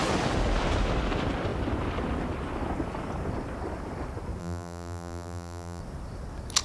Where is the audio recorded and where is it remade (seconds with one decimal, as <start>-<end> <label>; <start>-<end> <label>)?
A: 0.0-4.4 recorded; 4.4-5.8 remade; 5.8-6.6 recorded